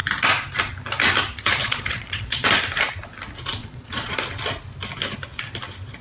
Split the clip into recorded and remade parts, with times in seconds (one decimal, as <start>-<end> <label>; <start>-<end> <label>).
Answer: 0.0-1.6 recorded; 1.6-2.5 remade; 2.5-3.6 recorded; 3.6-4.2 remade; 4.2-6.0 recorded